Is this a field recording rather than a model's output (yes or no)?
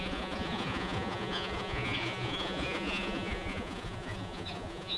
no